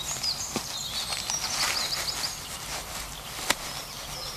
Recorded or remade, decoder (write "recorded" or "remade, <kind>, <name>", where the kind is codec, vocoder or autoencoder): recorded